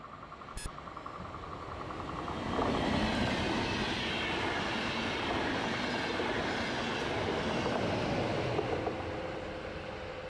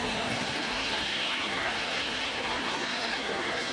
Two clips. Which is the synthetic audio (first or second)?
second